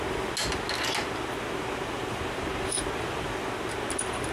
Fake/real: real